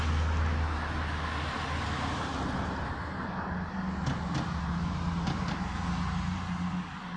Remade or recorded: recorded